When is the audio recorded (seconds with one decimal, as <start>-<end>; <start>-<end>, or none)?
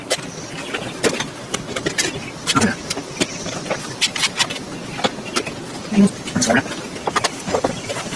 0.0-2.1; 6.4-7.1